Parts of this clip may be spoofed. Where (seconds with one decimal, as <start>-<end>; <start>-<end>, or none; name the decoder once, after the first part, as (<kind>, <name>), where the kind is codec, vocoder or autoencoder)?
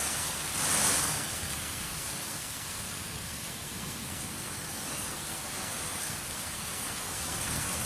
0.0-0.5 (codec, SNAC); 1.0-7.9